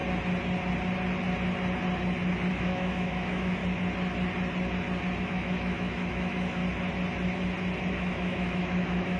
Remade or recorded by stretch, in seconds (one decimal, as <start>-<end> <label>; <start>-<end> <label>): 0.0-2.5 recorded; 2.5-3.6 remade; 3.6-5.2 recorded; 5.2-6.6 remade; 6.6-7.9 recorded; 7.9-9.2 remade